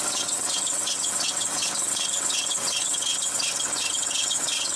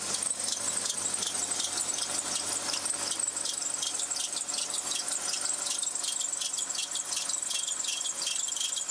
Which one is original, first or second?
second